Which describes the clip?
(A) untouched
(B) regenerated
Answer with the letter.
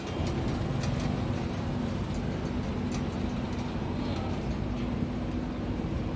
A